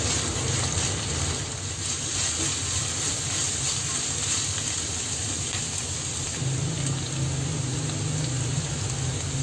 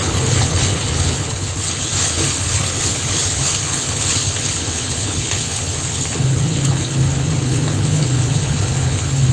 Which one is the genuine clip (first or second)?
first